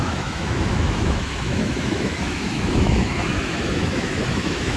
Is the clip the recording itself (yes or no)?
no